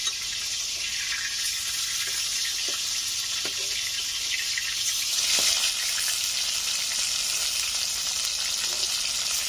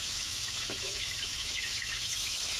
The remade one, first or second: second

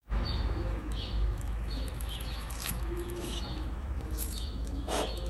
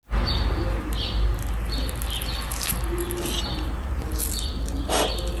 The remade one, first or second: first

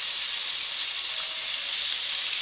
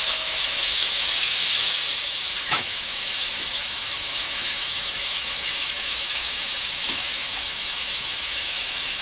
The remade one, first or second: second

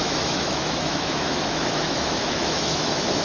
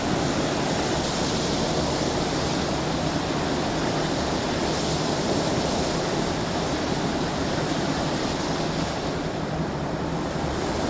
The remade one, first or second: first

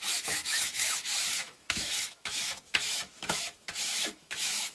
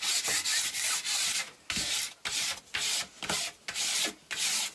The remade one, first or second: first